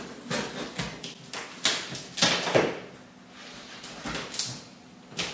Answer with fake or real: real